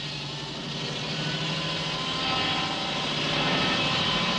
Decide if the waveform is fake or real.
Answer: real